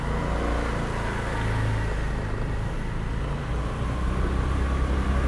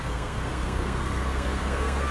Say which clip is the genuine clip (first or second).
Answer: first